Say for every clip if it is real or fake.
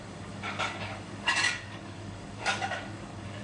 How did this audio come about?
fake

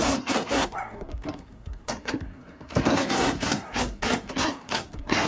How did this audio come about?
fake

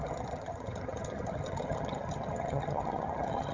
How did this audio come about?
fake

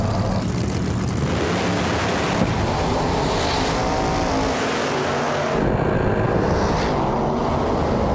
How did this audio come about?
real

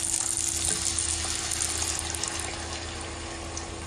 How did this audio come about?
real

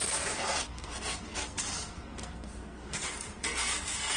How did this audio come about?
fake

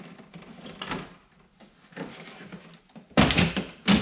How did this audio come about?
real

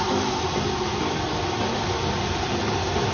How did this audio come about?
real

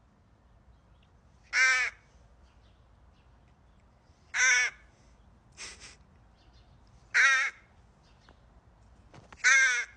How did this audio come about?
real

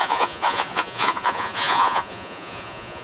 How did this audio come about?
fake